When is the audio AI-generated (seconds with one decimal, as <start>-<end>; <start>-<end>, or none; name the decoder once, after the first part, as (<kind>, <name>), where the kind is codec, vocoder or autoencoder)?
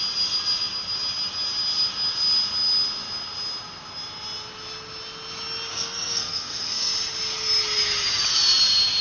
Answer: 5.7-6.9 (codec, SNAC)